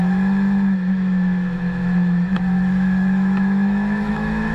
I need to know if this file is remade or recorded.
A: remade